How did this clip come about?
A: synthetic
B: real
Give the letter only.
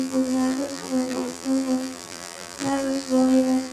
A